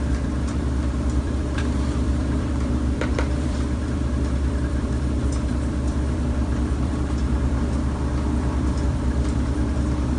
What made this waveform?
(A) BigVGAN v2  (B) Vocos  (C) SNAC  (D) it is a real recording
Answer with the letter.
A